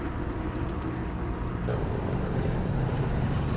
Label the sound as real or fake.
real